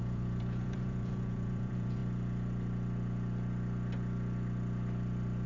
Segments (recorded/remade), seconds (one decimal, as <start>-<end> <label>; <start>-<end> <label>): 0.0-2.0 remade; 2.0-5.5 recorded